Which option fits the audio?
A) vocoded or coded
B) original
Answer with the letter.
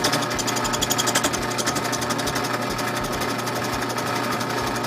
B